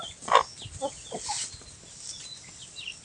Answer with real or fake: real